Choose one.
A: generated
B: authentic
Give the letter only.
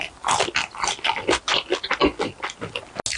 B